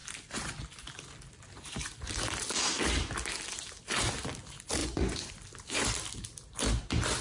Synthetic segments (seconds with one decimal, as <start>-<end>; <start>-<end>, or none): 4.8-5.3